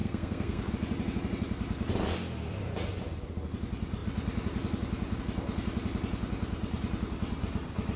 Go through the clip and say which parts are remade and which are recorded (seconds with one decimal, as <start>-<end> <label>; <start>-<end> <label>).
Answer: 0.0-0.7 remade; 0.7-8.0 recorded